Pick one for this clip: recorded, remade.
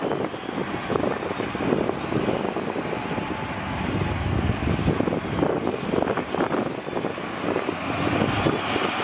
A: recorded